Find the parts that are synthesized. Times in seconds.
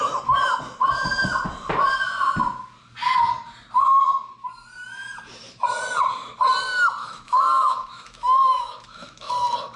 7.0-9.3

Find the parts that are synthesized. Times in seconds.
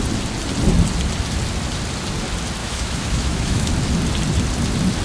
2.6-3.7